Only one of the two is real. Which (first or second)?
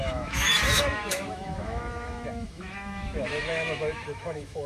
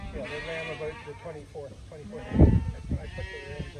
second